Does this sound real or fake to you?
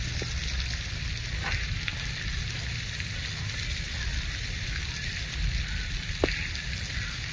real